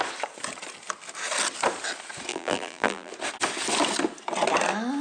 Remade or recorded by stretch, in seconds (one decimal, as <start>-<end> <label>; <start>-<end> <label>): 0.0-2.3 recorded; 2.3-3.1 remade; 3.1-5.0 recorded

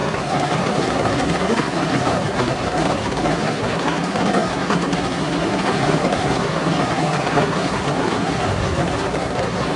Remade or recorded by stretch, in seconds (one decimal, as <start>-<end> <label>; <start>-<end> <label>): 0.0-9.8 remade

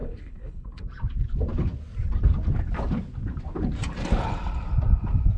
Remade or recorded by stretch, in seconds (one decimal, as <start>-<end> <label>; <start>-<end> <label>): 0.0-0.8 remade; 0.8-5.4 recorded